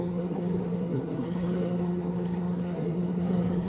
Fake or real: fake